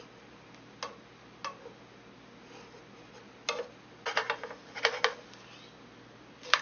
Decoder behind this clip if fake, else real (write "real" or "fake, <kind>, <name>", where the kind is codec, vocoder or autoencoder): real